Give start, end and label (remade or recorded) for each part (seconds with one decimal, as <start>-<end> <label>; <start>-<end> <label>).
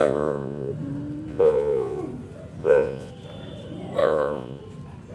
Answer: 0.0-0.7 remade; 0.7-1.3 recorded; 1.3-2.0 remade; 2.0-2.6 recorded; 2.6-3.1 remade; 3.1-4.0 recorded; 4.0-4.6 remade; 4.6-5.1 recorded